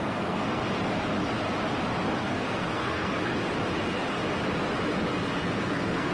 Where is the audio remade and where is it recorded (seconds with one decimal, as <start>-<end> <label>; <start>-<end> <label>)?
0.0-0.6 remade; 0.6-2.2 recorded; 2.2-3.3 remade; 3.3-5.5 recorded; 5.5-6.1 remade